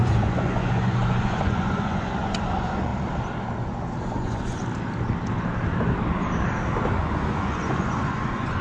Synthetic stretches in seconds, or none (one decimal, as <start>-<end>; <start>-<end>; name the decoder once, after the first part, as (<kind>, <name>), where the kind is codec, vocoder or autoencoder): 0.0-2.9 (vocoder, Vocos); 4.0-4.6; 7.0-8.6